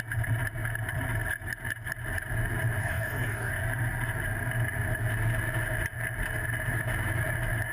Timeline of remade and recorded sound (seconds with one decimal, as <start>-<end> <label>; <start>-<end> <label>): 0.0-2.8 recorded; 2.8-3.5 remade; 3.5-7.7 recorded